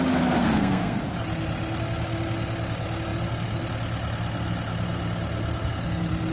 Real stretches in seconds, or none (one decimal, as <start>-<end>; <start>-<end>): 0.0-0.4; 1.0-6.3